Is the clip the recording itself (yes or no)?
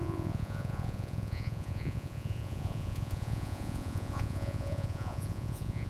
no